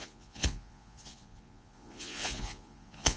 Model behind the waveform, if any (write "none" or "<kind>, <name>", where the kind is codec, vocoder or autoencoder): vocoder, Vocos